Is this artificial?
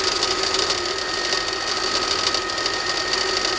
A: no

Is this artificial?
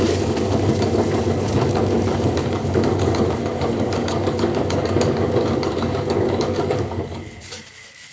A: yes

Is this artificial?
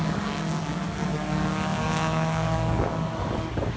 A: yes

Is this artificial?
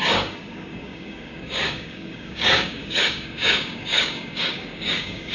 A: yes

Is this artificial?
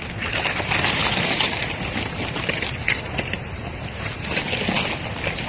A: no